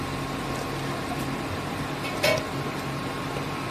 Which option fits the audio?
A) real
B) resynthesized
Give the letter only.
A